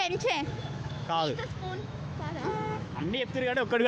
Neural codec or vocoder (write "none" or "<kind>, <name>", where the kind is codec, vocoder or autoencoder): autoencoder, DAC-VAE